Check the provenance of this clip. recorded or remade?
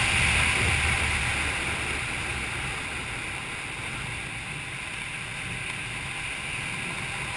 recorded